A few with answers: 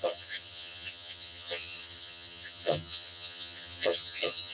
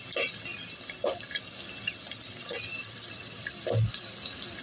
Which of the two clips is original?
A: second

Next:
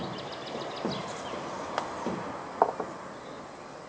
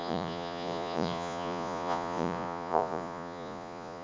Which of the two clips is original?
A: first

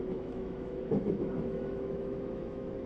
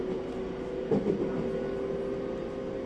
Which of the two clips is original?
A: second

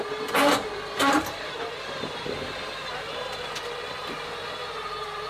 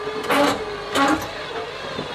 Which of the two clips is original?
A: second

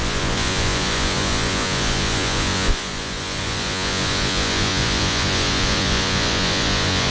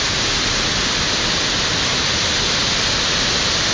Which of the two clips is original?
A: second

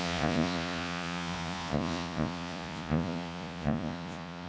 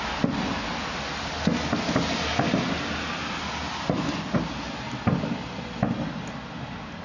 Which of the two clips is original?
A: second